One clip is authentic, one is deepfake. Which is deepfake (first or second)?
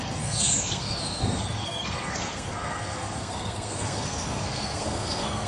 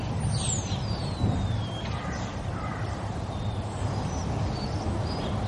first